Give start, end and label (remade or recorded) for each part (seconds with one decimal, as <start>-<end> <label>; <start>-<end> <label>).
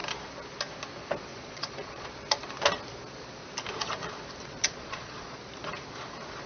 0.0-1.3 recorded; 1.3-2.1 remade; 2.1-4.4 recorded; 4.4-5.4 remade; 5.4-6.5 recorded